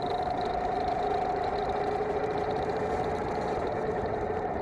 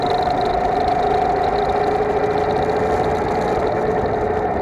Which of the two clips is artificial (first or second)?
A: first